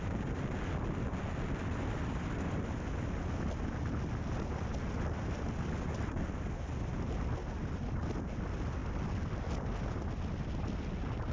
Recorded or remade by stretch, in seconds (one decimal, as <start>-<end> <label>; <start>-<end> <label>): 0.0-11.3 recorded